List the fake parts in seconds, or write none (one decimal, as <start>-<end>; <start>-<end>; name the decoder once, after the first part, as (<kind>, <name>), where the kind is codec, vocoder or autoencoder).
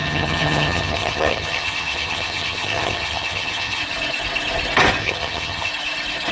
0.0-3.8 (vocoder, HiFi-GAN); 5.0-5.7